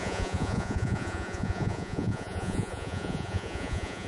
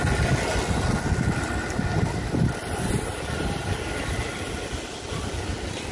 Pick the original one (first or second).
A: second